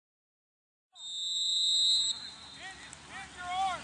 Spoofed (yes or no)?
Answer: no